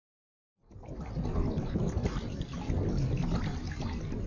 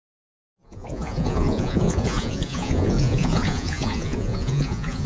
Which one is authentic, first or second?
first